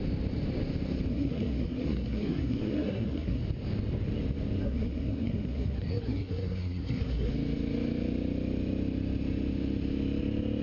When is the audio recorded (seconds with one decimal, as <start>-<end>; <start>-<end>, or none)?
0.0-1.1; 3.4-4.6; 7.3-10.6